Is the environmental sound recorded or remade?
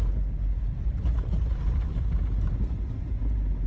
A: recorded